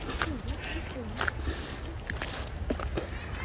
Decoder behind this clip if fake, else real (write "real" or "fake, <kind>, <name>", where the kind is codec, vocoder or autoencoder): real